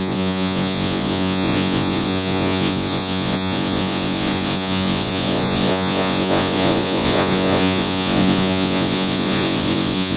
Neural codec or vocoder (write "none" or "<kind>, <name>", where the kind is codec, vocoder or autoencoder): vocoder, Vocos